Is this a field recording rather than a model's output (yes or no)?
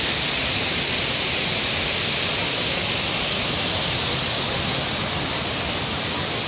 no